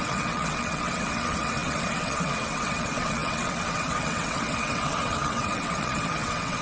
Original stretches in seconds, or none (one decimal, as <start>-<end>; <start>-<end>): none

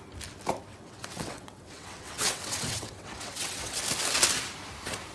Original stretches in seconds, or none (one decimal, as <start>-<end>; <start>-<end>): 0.0-0.7; 3.8-5.1